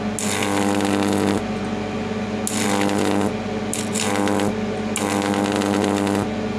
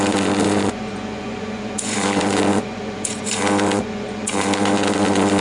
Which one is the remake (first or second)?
second